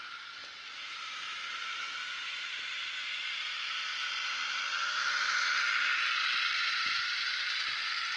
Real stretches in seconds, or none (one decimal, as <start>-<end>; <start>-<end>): 0.0-0.8; 4.1-6.5; 7.1-8.2